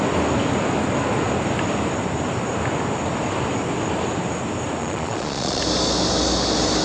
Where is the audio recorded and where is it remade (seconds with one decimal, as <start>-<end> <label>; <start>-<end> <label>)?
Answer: 0.0-4.8 recorded; 4.8-5.6 remade; 5.6-6.8 recorded